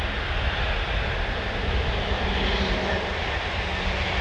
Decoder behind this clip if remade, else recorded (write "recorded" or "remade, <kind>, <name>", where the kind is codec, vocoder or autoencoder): recorded